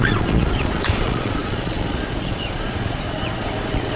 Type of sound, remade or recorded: remade